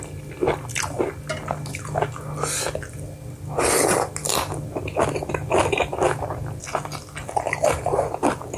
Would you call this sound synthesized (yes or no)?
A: no